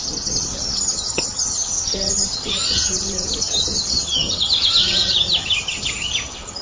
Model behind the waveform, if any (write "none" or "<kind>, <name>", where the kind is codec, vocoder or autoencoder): vocoder, HiFi-GAN